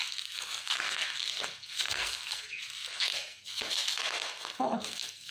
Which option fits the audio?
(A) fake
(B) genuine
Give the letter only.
A